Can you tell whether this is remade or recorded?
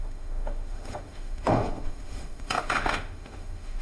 remade